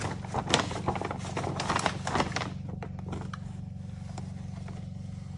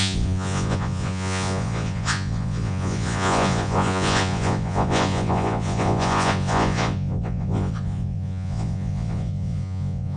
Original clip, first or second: first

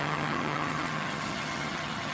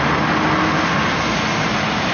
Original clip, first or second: second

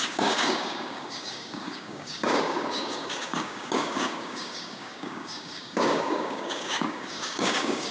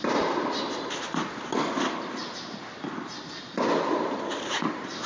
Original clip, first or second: second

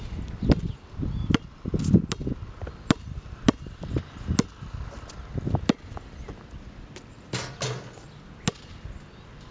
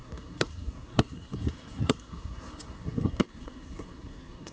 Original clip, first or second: first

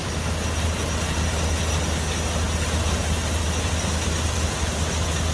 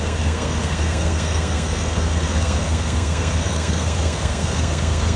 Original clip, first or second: first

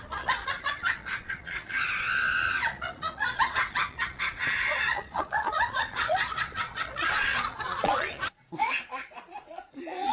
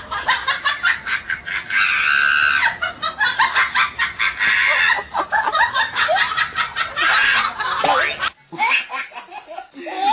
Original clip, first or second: second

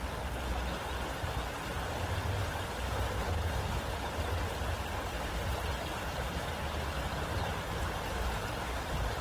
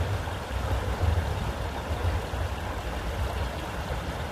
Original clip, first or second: first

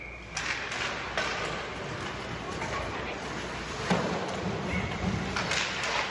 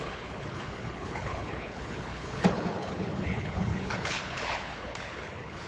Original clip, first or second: first